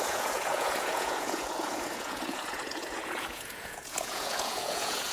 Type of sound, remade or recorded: remade